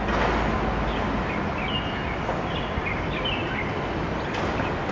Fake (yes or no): no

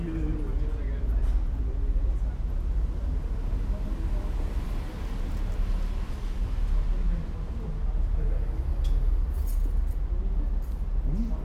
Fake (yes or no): no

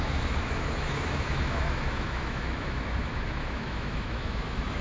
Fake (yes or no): yes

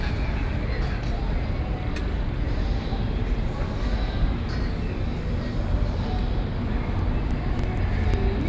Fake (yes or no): no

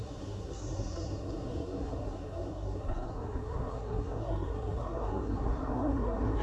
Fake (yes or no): yes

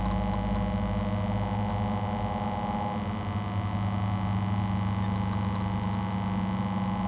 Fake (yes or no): no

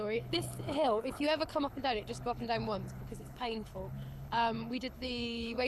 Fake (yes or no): yes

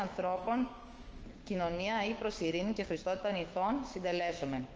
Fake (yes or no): yes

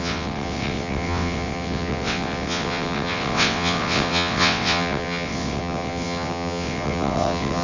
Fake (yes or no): yes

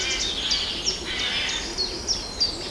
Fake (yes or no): no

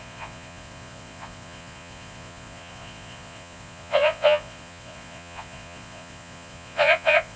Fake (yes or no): yes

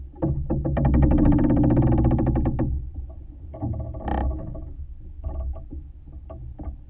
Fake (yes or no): no